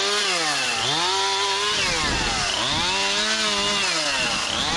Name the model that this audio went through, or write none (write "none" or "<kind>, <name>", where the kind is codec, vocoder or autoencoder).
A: none